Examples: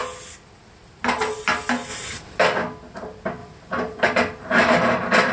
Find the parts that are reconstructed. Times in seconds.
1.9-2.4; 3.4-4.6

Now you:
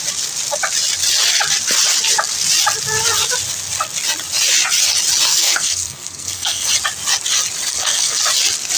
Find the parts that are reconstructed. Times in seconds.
5.3-6.7; 7.7-8.2

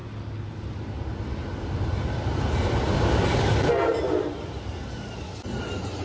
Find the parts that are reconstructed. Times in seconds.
none

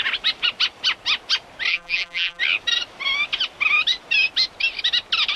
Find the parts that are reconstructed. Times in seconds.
1.7-2.4

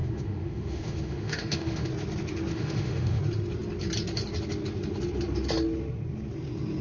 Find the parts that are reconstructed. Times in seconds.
0.0-1.9; 2.5-3.2

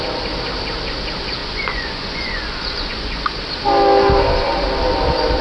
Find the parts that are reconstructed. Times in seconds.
1.4-3.4